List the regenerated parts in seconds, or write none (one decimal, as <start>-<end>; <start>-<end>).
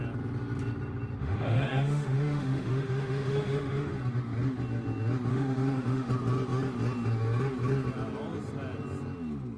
1.2-3.9; 5.3-6.1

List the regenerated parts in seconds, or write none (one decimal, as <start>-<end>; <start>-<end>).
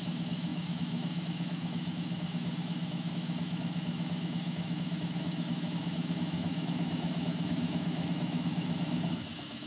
0.0-9.7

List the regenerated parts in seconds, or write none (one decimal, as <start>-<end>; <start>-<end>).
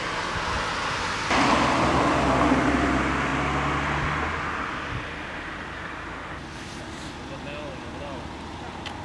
none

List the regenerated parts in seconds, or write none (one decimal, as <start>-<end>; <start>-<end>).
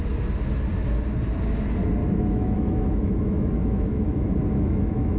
2.0-5.2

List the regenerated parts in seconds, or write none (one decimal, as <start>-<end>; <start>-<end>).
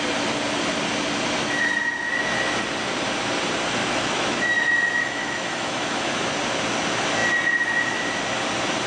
3.8-6.3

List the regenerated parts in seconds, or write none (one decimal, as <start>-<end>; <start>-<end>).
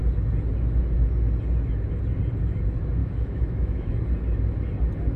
3.0-3.9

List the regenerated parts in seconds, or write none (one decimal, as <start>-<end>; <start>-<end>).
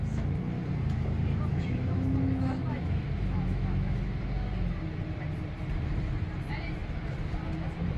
1.5-4.2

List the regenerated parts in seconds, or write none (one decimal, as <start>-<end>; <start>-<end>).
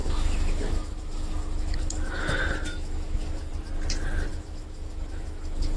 0.0-3.5; 4.3-5.8